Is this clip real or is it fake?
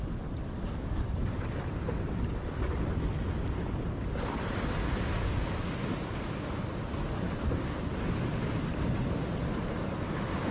real